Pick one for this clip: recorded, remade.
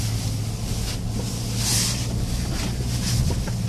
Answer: recorded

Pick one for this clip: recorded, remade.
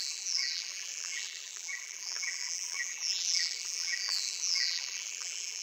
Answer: remade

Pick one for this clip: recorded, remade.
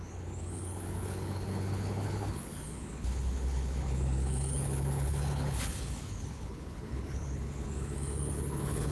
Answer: remade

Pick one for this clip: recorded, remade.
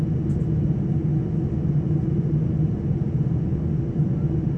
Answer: recorded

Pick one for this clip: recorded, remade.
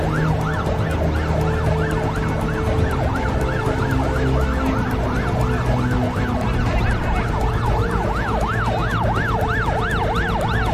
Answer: recorded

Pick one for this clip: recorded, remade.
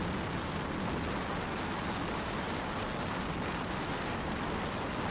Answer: recorded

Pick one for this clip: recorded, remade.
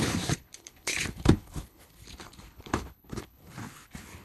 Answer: remade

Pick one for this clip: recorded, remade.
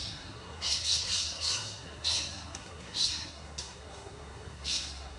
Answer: remade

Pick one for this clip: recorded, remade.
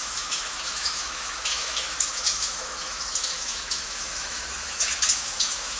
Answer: remade